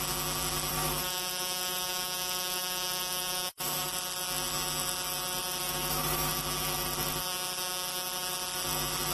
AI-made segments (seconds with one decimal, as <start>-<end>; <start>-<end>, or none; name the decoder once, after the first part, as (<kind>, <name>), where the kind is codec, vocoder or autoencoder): 0.7-3.9 (autoencoder, DAC-VAE); 5.6-6.3